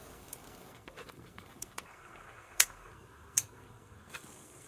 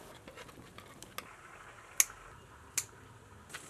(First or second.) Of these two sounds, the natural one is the second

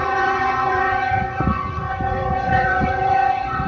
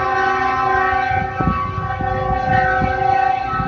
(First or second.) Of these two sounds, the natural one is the second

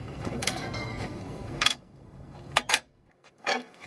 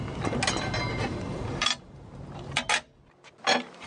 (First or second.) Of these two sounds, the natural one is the second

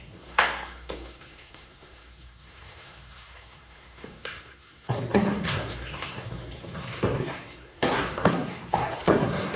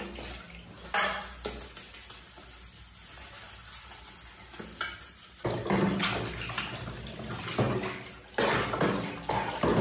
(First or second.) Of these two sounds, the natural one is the second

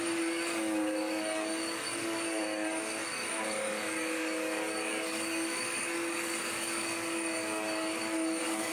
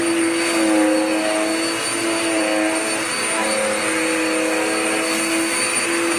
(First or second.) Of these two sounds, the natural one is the second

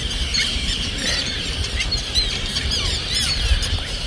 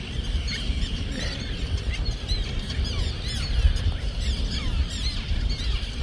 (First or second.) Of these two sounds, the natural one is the second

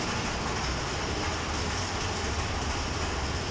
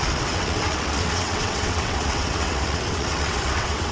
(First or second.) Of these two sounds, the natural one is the first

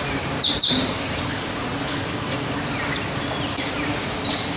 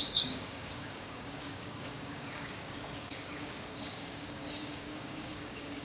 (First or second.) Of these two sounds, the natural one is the first